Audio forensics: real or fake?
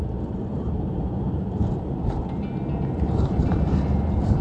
fake